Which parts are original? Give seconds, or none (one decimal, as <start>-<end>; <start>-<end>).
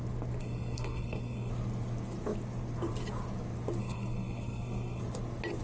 0.0-0.4; 1.5-3.8; 5.0-5.6